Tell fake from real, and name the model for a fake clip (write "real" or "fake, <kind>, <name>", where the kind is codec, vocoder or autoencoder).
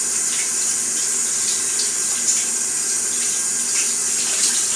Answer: real